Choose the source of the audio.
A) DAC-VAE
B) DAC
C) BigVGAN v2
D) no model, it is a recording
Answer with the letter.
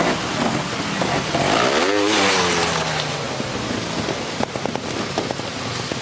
D